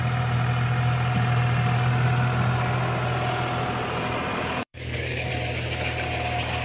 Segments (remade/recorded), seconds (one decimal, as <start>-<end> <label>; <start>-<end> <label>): 0.0-4.3 recorded; 4.3-5.3 remade; 5.3-6.6 recorded